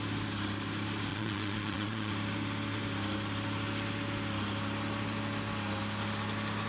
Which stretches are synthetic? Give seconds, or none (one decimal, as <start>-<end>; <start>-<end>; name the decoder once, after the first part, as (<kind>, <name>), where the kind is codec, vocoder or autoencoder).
1.1-2.1 (vocoder, Vocos)